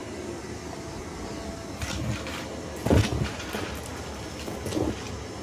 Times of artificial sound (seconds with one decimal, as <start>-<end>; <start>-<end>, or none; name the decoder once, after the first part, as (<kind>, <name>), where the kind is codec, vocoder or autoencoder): 2.8-4.2 (vocoder, BigVGAN v2)